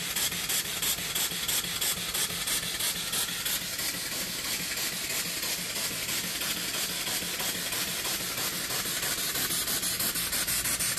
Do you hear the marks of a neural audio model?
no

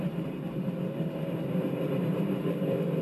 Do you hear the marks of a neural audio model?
yes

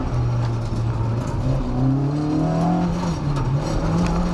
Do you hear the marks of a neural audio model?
no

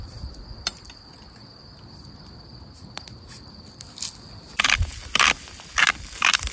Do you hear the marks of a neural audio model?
no